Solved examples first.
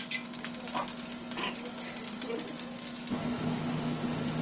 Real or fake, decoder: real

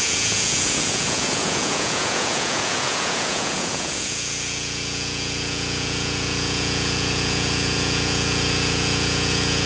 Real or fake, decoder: fake, vocoder, Vocos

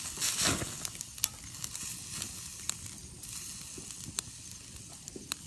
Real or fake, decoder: real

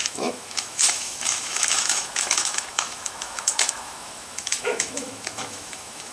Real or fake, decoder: fake, autoencoder, DAC-VAE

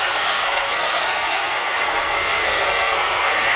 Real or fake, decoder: fake, codec, SNAC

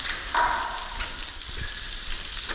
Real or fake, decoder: fake, vocoder, BigVGAN v2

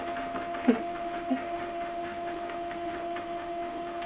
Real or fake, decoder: fake, autoencoder, DAC-VAE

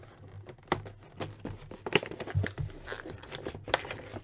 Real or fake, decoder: real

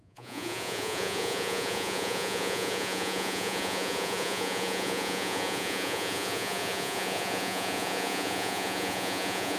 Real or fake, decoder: fake, vocoder, Vocos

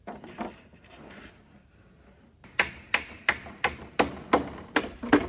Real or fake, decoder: real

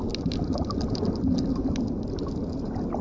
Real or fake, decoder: real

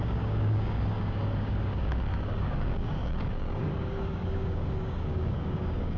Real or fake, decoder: fake, codec, DAC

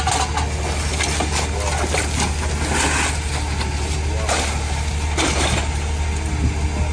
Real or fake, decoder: real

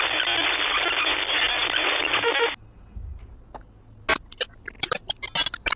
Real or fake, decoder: real